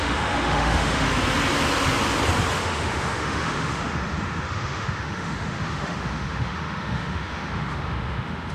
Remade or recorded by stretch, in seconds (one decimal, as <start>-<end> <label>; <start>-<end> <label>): 0.0-1.1 remade; 1.1-2.5 recorded; 2.5-8.5 remade